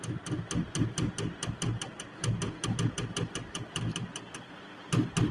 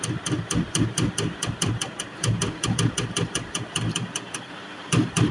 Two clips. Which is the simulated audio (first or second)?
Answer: second